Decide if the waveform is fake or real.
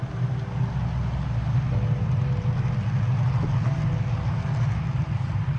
real